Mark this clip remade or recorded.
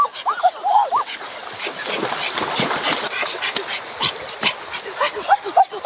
recorded